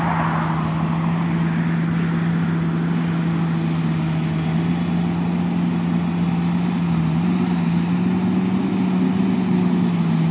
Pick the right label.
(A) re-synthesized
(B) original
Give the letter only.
B